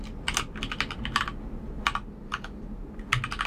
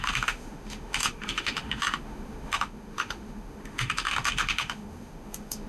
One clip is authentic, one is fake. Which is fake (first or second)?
second